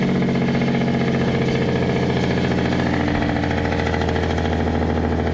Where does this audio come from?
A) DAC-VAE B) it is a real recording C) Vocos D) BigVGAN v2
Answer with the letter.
B